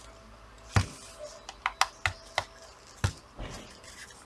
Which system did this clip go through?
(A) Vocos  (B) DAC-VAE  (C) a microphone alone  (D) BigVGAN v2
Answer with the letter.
C